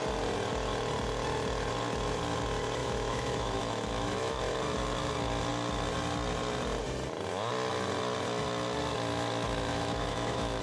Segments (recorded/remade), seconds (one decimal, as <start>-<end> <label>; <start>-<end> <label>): 0.0-2.8 recorded; 2.8-4.4 remade; 4.4-9.7 recorded; 9.7-10.6 remade

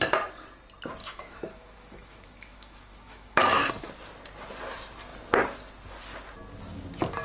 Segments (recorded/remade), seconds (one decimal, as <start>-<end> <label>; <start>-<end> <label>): 0.0-1.0 recorded; 1.0-3.7 remade; 3.7-7.2 recorded

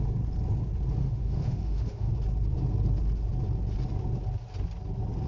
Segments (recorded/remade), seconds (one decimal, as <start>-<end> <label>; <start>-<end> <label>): 0.0-1.0 recorded; 1.0-2.1 remade; 2.1-5.3 recorded

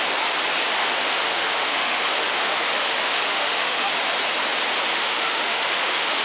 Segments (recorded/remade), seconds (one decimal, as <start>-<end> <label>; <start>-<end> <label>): 0.0-0.8 recorded; 0.8-3.9 remade; 3.9-4.9 recorded; 4.9-6.2 remade

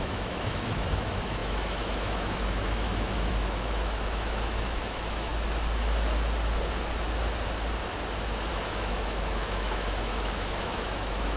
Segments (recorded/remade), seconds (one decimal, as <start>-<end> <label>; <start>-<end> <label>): 0.0-5.3 remade; 5.3-8.5 recorded; 8.5-11.4 remade

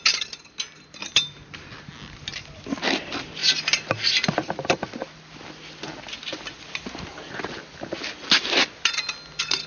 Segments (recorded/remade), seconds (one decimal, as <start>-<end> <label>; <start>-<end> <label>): 0.0-9.7 recorded